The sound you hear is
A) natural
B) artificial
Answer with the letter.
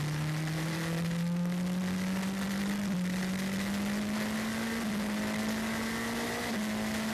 A